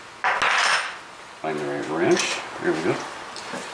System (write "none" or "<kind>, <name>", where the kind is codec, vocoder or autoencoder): none